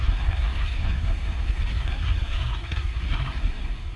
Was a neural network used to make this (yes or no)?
yes